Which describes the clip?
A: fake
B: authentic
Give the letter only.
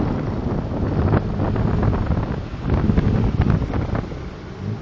B